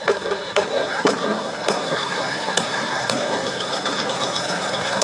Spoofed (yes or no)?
yes